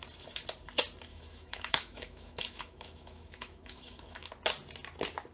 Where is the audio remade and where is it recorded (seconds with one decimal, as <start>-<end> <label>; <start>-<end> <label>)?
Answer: 0.0-1.1 recorded; 1.1-4.3 remade; 4.3-5.3 recorded